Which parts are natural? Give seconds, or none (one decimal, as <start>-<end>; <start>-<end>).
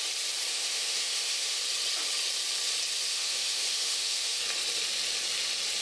0.0-0.5; 1.6-3.1; 4.4-5.8